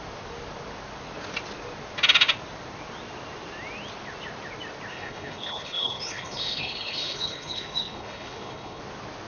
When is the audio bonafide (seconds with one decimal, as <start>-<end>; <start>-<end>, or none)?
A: 0.0-4.9; 8.8-9.3